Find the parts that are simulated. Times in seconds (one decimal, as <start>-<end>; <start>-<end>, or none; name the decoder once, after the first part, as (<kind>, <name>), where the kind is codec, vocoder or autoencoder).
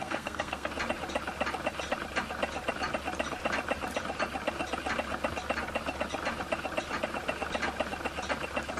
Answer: 0.0-0.7 (codec, SNAC)